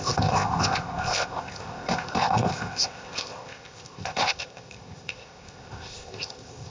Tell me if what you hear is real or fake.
fake